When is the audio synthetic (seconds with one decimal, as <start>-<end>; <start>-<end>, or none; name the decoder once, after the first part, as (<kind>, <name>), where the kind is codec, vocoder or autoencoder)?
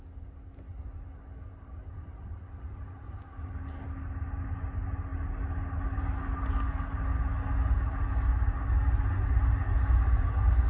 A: none